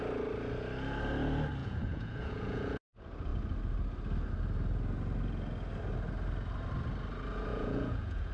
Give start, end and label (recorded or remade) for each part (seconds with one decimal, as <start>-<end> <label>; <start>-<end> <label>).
0.0-1.6 recorded; 1.6-2.9 remade; 2.9-7.5 recorded; 7.5-8.3 remade